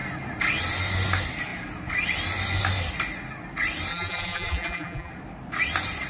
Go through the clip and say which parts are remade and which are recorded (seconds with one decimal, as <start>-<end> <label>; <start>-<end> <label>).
0.0-3.9 recorded; 3.9-5.1 remade; 5.1-6.1 recorded